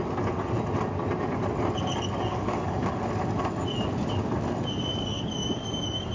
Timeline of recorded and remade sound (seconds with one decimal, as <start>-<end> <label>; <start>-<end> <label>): 0.0-2.3 recorded; 2.3-3.0 remade; 3.0-4.9 recorded; 4.9-6.1 remade